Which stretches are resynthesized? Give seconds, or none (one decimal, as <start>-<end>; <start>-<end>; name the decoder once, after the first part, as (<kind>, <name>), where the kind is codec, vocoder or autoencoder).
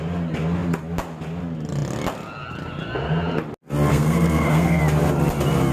3.9-4.8 (codec, SNAC)